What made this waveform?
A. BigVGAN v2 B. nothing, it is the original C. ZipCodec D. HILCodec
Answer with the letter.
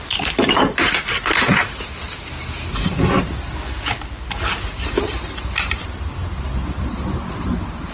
B